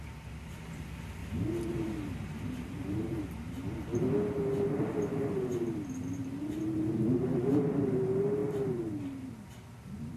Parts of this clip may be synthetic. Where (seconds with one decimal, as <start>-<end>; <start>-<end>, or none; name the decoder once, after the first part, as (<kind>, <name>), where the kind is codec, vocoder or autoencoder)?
none